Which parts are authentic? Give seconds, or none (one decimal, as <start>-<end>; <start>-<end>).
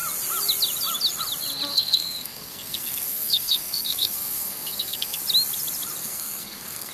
0.0-1.7; 5.2-6.0